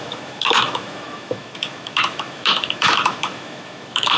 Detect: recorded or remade remade